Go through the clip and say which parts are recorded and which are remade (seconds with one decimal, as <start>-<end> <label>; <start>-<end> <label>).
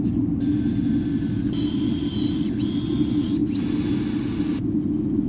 0.0-2.1 recorded; 2.1-2.8 remade; 2.8-5.3 recorded